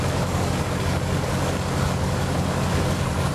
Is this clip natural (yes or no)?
no